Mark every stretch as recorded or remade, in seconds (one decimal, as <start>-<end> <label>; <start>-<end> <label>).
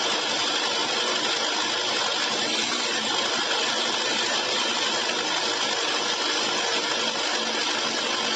0.0-8.4 recorded